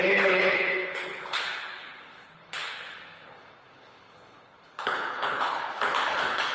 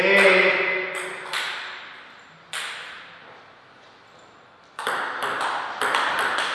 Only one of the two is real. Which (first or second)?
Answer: second